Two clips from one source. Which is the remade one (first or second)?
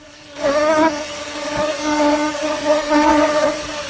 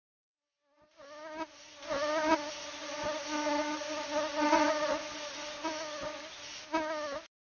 first